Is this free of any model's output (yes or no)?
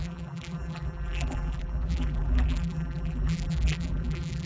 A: no